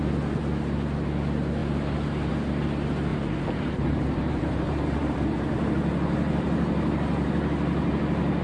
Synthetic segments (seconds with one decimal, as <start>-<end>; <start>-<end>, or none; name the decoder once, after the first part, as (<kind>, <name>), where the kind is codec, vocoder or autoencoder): 3.1-5.5 (vocoder, BigVGAN v2)